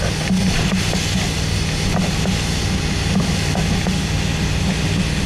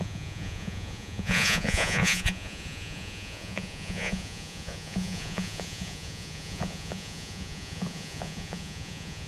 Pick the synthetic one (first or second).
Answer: second